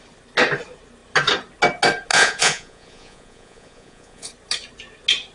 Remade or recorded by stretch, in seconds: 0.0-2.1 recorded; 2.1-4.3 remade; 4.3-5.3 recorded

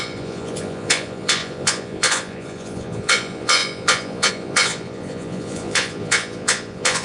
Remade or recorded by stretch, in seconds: 0.0-7.0 remade

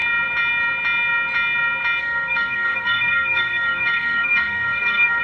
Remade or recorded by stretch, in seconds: 0.0-2.0 recorded; 2.0-5.2 remade

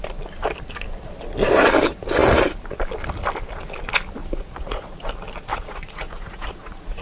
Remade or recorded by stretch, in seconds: 0.0-4.2 recorded; 4.2-5.1 remade; 5.1-5.5 recorded; 5.5-7.0 remade